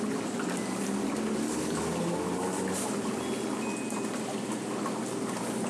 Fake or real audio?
real